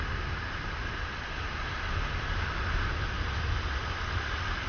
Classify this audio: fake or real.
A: real